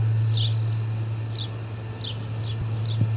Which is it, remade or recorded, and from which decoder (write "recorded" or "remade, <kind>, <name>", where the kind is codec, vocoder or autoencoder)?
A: recorded